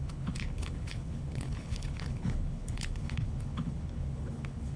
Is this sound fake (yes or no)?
yes